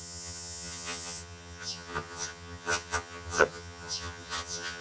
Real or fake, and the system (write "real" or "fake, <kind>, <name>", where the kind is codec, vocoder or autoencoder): fake, vocoder, HiFi-GAN